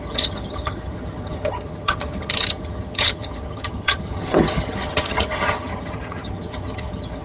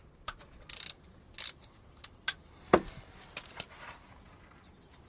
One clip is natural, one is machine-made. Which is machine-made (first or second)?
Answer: first